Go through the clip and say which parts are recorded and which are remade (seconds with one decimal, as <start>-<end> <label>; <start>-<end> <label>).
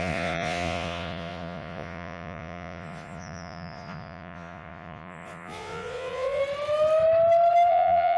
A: 0.0-6.4 remade; 6.4-7.7 recorded; 7.7-8.2 remade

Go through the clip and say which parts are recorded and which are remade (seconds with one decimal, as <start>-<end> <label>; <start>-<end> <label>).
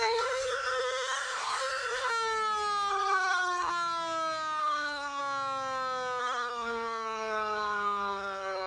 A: 0.0-2.1 remade; 2.1-2.9 recorded; 2.9-3.7 remade; 3.7-4.6 recorded; 4.6-5.2 remade; 5.2-6.2 recorded; 6.2-8.7 remade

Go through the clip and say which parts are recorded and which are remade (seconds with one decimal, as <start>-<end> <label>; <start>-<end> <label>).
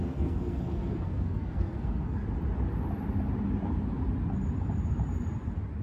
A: 0.0-2.2 remade; 2.2-5.8 recorded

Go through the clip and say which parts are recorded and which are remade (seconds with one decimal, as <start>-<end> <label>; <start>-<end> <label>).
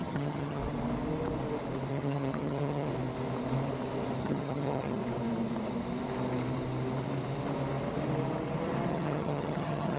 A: 0.0-0.6 remade; 0.6-1.9 recorded; 1.9-2.9 remade; 2.9-4.2 recorded; 4.2-5.0 remade; 5.0-8.9 recorded; 8.9-10.0 remade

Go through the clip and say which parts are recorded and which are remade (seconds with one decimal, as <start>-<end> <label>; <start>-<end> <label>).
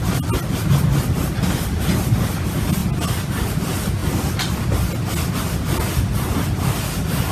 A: 0.0-7.3 recorded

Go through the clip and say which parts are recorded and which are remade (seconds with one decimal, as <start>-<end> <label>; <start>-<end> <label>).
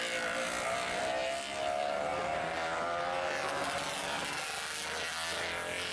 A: 0.0-5.9 recorded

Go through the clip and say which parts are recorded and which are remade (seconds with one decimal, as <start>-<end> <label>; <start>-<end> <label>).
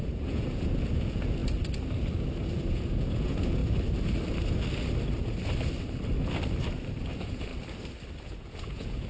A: 0.0-1.4 remade; 1.4-2.5 recorded; 2.5-3.6 remade; 3.6-7.0 recorded; 7.0-7.5 remade; 7.5-8.2 recorded; 8.2-9.1 remade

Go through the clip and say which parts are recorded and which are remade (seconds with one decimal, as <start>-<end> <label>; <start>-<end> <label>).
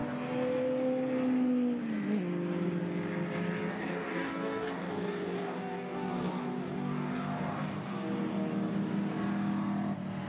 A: 0.0-3.7 recorded; 3.7-7.8 remade; 7.8-10.3 recorded